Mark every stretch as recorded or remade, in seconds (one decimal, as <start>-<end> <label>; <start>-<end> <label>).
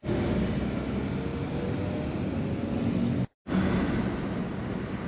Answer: 0.0-5.1 recorded